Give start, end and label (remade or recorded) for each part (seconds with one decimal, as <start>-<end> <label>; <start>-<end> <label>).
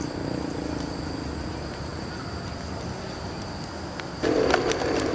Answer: 0.0-5.1 recorded